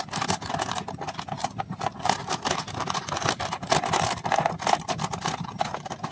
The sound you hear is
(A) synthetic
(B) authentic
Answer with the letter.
B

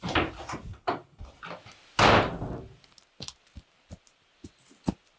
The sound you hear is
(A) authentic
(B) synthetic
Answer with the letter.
A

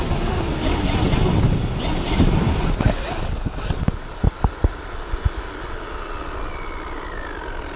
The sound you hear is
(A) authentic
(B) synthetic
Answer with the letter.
A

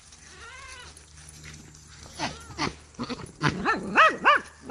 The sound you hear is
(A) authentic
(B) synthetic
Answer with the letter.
A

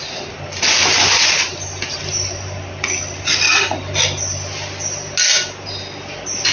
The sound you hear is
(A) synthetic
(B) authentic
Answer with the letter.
B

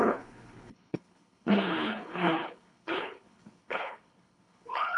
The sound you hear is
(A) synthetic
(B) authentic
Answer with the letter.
A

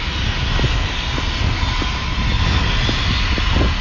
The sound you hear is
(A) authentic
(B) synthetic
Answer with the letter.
A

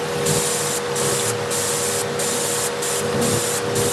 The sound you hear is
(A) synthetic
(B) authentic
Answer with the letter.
B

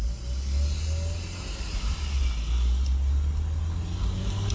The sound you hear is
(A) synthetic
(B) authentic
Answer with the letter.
B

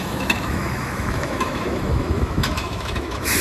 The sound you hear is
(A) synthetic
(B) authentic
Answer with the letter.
A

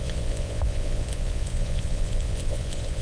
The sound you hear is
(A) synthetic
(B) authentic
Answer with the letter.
A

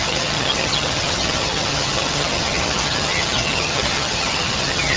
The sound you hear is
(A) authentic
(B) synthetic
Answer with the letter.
B